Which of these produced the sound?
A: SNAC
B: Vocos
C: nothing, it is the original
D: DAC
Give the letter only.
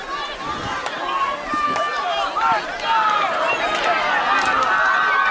C